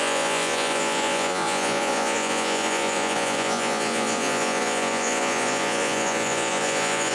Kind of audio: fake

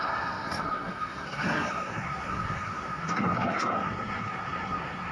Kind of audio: fake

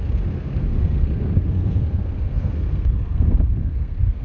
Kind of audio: fake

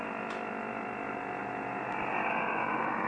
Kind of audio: real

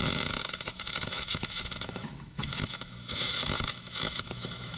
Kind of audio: fake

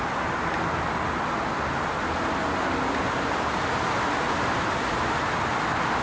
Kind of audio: real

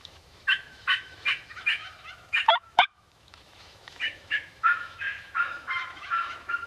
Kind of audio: fake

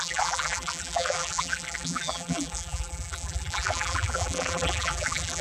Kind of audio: fake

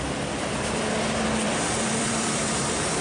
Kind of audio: fake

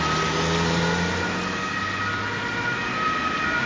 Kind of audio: real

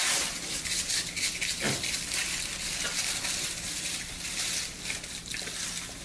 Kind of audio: real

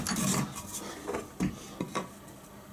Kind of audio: real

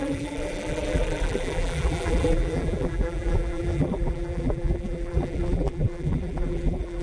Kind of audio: fake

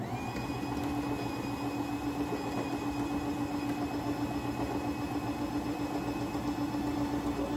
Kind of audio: real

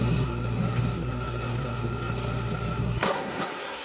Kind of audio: fake